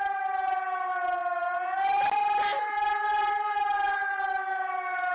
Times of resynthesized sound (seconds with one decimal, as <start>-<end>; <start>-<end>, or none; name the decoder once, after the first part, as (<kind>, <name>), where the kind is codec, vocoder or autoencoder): none